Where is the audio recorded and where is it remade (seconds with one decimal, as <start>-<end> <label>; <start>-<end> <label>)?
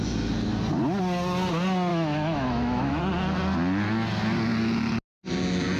0.0-1.9 recorded; 1.9-3.0 remade; 3.0-5.8 recorded